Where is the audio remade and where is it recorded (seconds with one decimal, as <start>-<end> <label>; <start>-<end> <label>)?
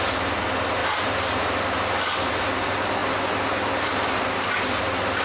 0.0-0.8 recorded; 0.8-2.3 remade; 2.3-5.2 recorded